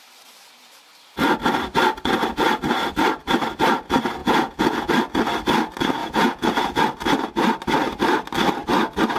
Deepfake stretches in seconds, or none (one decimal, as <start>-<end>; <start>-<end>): 4.2-4.9; 6.0-6.8